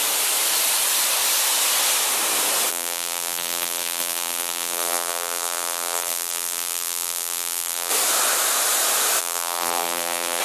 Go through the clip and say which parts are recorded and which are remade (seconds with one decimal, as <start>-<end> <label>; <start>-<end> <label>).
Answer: 0.0-2.7 recorded; 2.7-7.9 remade; 7.9-9.2 recorded; 9.2-10.4 remade